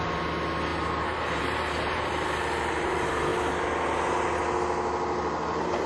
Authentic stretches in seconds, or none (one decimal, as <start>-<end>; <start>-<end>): 0.0-5.9